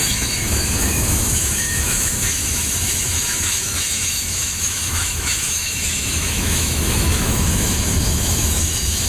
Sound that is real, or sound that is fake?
fake